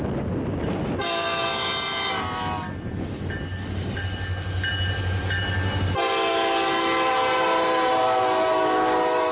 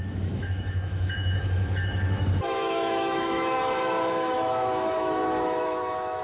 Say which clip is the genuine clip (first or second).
first